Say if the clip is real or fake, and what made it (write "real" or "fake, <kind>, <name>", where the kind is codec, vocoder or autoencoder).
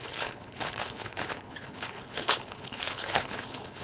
fake, codec, HILCodec